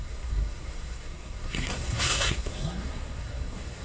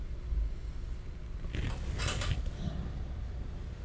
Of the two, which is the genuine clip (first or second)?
second